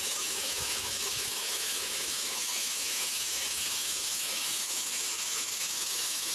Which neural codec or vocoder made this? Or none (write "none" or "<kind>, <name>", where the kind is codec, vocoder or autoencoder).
autoencoder, DAC-VAE